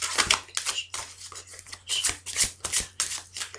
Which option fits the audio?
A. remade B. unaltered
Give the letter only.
B